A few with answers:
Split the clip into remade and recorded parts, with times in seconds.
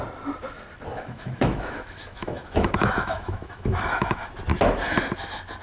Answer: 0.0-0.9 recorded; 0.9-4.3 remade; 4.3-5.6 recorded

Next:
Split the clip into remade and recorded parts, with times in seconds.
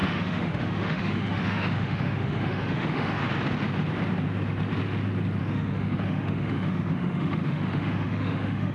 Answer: 0.0-3.2 remade; 3.2-5.4 recorded; 5.4-8.7 remade